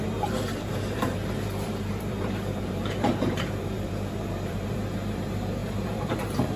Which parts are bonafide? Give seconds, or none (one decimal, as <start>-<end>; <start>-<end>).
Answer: none